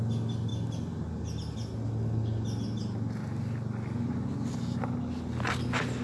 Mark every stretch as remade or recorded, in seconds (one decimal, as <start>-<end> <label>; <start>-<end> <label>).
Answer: 0.0-6.0 recorded